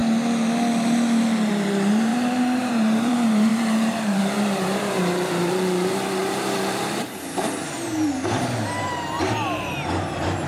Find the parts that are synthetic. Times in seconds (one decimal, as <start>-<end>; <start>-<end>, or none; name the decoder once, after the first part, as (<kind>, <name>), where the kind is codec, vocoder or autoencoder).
1.5-10.5 (vocoder, BigVGAN v2)